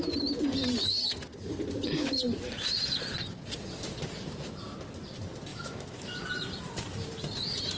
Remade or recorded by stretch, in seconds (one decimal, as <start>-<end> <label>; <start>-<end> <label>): 0.0-5.5 recorded; 5.5-6.2 remade; 6.2-7.8 recorded